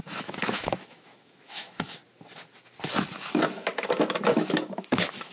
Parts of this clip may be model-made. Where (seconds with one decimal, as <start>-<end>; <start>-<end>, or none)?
0.0-2.0; 3.3-5.3